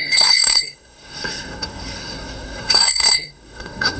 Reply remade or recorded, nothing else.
remade